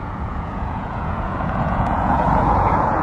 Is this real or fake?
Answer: fake